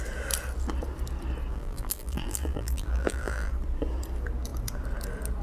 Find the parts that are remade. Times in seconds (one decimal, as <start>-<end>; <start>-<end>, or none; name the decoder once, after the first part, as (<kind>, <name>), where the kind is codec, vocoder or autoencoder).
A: 1.5-3.5 (vocoder, BigVGAN v2)